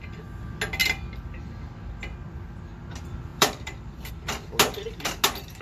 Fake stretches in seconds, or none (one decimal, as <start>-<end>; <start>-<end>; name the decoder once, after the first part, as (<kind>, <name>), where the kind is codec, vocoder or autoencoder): 3.3-4.1 (vocoder, BigVGAN v2)